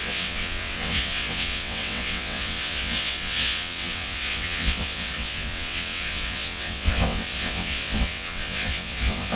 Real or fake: fake